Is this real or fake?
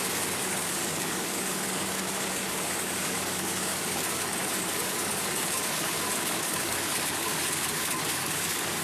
fake